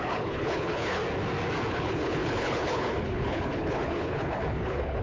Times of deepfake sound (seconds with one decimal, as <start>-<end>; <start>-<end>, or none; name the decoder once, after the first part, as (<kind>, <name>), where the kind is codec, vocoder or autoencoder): 0.0-1.0 (codec, HILCodec); 1.7-5.0